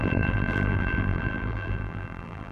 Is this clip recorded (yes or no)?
no